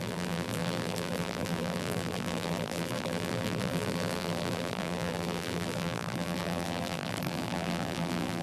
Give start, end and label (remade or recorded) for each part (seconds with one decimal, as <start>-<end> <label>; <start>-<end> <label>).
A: 0.0-8.4 remade